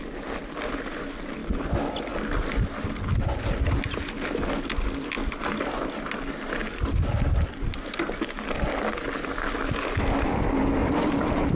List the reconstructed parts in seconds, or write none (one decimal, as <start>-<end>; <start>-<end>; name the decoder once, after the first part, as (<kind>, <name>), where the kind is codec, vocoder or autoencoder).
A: 10.8-11.6 (vocoder, BigVGAN v2)